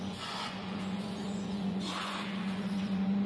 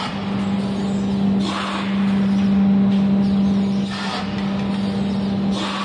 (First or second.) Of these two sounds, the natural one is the second